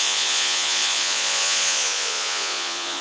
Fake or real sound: fake